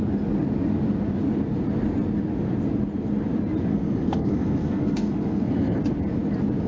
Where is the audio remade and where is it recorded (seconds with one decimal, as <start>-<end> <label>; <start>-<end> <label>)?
0.0-3.7 recorded; 3.7-5.8 remade; 5.8-6.7 recorded